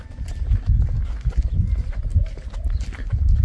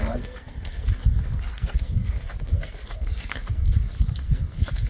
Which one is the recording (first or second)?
first